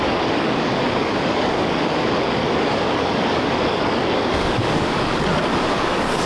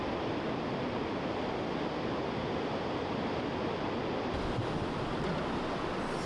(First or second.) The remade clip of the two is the first